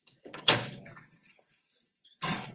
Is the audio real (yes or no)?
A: no